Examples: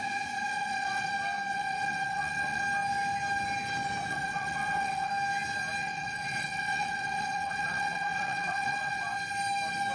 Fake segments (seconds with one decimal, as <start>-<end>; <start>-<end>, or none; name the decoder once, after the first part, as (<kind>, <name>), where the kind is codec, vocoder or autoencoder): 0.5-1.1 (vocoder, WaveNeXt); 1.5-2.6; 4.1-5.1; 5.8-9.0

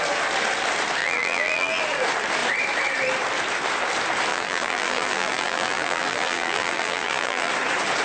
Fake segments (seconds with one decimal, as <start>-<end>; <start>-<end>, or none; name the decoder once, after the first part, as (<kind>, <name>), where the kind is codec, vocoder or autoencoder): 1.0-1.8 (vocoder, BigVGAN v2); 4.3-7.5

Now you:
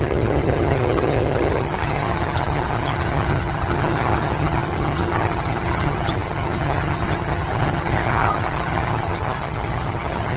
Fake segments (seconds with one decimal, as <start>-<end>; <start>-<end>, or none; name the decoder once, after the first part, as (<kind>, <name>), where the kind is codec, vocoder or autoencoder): 0.0-10.4 (vocoder, HiFi-GAN)